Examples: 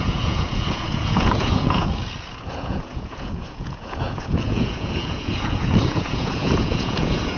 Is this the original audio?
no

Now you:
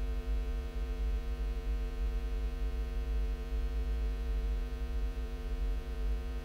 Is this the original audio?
no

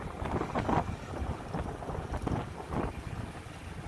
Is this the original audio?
yes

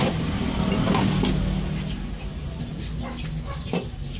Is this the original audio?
yes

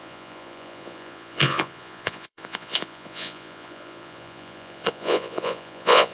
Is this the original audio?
no